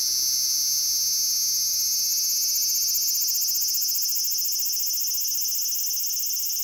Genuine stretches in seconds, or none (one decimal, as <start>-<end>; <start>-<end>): 0.0-6.6